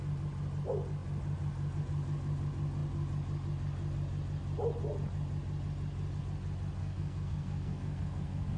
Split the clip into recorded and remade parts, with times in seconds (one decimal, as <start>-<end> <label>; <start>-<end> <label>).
0.0-6.8 recorded; 6.8-8.6 remade